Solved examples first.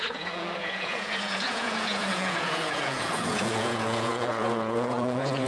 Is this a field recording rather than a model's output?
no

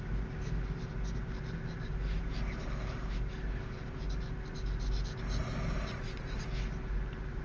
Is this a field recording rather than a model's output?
yes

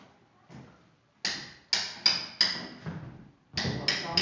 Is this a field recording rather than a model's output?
yes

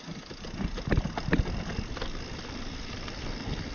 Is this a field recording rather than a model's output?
yes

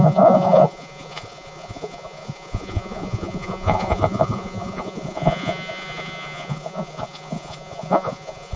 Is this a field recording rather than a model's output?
no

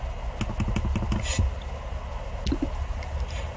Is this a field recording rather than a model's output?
yes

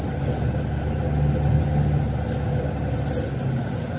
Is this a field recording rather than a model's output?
yes